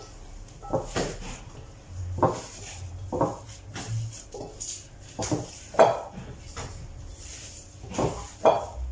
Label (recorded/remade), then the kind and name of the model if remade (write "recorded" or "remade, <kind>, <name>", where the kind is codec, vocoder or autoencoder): recorded